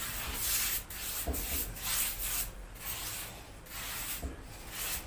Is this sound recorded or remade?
recorded